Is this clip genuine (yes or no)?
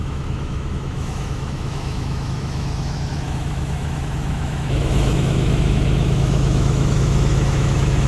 no